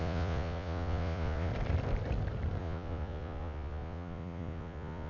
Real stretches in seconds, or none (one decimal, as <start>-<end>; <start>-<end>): 1.5-2.6